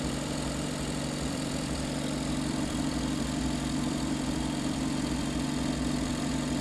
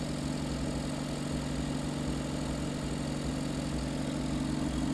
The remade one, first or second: first